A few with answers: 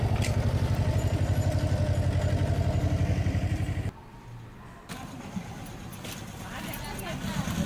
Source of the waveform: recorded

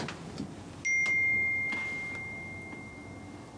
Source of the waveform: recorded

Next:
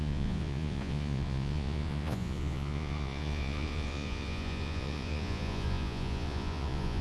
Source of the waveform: remade